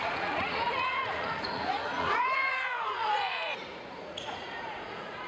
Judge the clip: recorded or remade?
remade